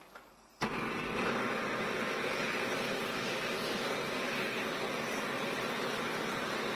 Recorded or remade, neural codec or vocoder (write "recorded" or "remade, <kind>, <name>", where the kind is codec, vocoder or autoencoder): recorded